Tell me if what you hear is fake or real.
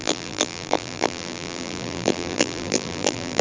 fake